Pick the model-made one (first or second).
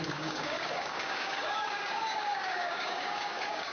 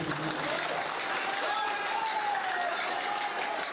first